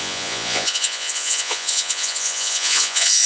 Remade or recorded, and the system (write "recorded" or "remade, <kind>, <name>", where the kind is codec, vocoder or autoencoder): remade, vocoder, Vocos